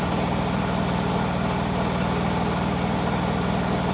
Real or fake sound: real